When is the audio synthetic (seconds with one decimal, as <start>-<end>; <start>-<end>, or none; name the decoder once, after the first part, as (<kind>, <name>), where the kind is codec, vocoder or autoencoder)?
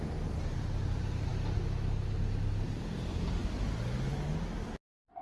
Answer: none